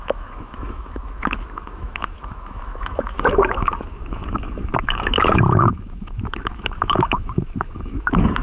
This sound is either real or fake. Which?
fake